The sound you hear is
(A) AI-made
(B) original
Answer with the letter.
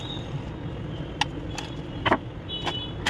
B